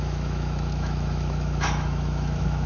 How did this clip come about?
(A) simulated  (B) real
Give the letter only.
A